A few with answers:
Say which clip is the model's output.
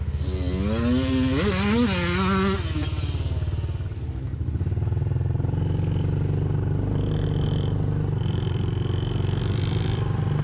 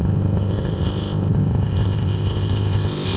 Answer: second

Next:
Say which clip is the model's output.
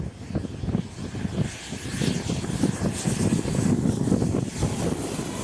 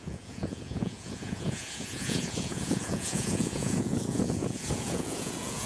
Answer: second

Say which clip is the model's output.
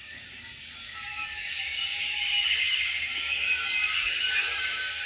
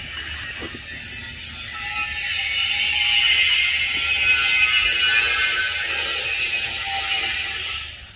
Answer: first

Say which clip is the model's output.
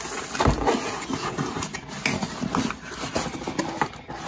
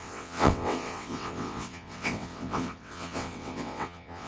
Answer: second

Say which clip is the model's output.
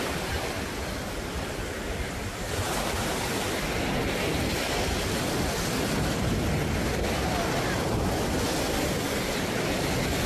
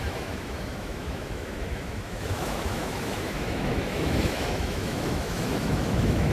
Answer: second